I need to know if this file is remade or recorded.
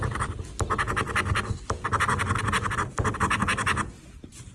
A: recorded